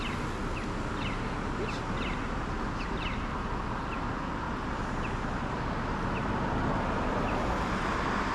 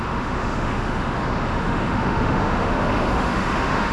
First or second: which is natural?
first